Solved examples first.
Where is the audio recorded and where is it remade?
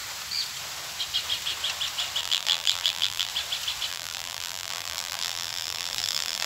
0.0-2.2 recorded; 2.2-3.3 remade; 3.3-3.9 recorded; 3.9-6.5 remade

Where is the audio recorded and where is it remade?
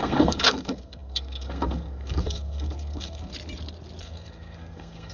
0.0-3.3 remade; 3.3-4.0 recorded; 4.0-5.1 remade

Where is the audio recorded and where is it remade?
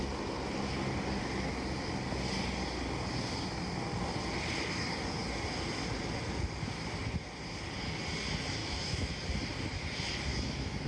0.0-8.6 recorded; 8.6-9.2 remade; 9.2-10.3 recorded; 10.3-10.9 remade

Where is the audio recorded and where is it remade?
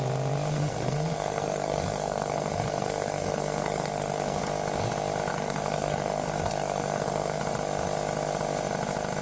0.0-0.5 recorded; 0.5-4.4 remade; 4.4-5.3 recorded; 5.3-7.4 remade; 7.4-9.2 recorded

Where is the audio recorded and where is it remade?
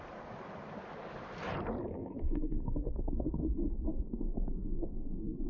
0.0-1.9 recorded; 1.9-5.5 remade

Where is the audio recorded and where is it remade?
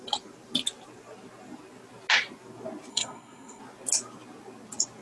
0.0-2.9 recorded; 2.9-3.6 remade; 3.6-5.0 recorded